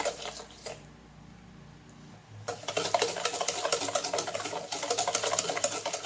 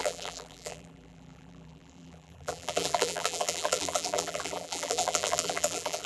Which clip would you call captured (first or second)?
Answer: first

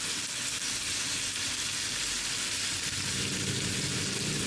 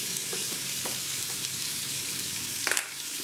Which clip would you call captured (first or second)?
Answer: first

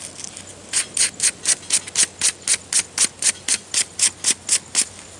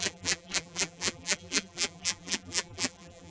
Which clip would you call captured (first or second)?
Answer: first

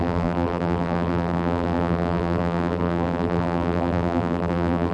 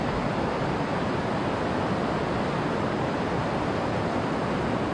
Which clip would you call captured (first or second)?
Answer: second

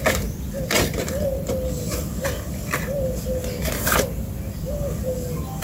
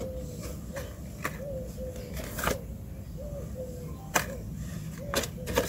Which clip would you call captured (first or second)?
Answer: second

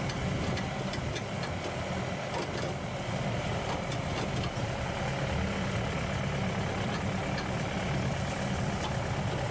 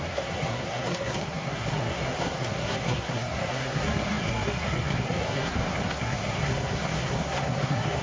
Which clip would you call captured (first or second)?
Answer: first